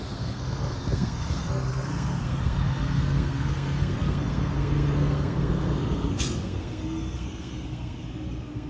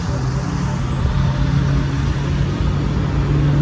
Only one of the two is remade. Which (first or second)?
first